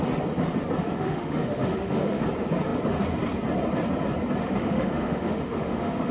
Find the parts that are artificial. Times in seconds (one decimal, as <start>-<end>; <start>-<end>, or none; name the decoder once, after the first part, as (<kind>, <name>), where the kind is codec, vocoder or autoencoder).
0.8-2.2 (autoencoder, DAC-VAE); 4.4-6.1